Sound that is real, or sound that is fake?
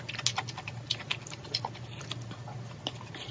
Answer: real